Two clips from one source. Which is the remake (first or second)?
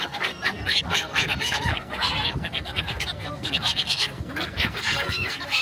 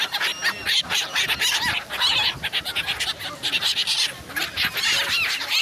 first